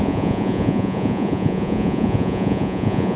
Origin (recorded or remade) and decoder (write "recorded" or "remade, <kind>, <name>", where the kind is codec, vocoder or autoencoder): remade, vocoder, Vocos